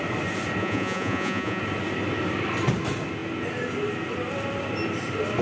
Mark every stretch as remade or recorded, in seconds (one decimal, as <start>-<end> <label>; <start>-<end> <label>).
0.0-0.6 recorded; 0.6-1.6 remade; 1.6-5.4 recorded